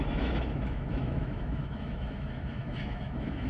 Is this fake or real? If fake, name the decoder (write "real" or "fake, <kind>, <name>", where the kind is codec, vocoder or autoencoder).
fake, autoencoder, DAC-VAE